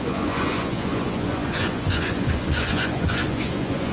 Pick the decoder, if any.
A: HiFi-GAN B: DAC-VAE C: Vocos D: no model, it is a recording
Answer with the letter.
C